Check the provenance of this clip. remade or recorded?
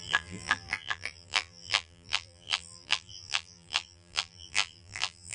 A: remade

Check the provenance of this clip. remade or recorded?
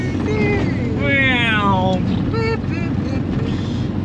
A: recorded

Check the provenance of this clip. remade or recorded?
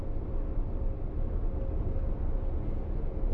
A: recorded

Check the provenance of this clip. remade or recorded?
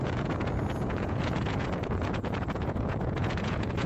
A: remade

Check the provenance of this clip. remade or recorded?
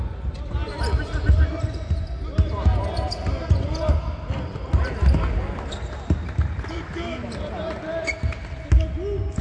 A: recorded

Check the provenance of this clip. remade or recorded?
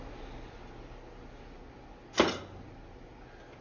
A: recorded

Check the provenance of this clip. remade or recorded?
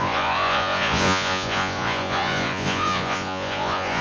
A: remade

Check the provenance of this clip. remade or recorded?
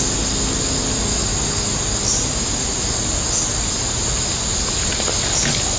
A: recorded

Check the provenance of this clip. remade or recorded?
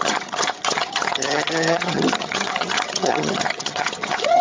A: remade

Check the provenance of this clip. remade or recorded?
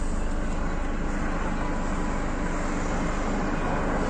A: recorded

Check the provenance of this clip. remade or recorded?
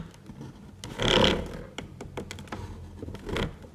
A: recorded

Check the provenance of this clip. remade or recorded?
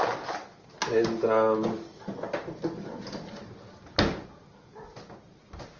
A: recorded